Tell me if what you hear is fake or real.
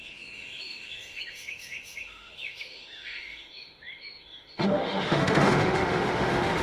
fake